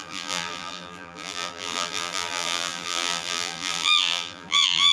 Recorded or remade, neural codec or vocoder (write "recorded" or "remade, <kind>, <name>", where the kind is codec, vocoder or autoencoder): remade, vocoder, BigVGAN v2